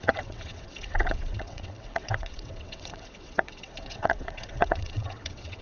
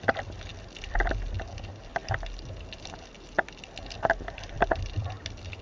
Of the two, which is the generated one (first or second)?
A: first